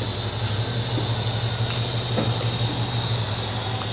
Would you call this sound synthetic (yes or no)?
no